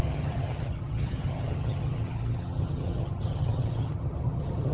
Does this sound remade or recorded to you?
remade